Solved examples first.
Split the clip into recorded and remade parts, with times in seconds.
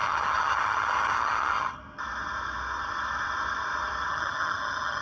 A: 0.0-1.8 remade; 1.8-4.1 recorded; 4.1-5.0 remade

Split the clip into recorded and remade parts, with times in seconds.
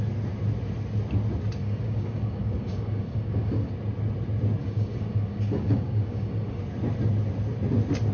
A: 0.0-1.6 recorded; 1.6-3.7 remade; 3.7-4.6 recorded; 4.6-6.6 remade; 6.6-8.1 recorded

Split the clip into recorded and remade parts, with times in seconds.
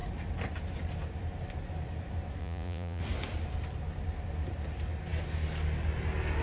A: 0.0-2.4 recorded; 2.4-3.0 remade; 3.0-6.4 recorded